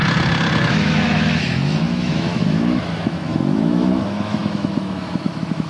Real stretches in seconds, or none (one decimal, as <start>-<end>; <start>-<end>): 0.0-0.7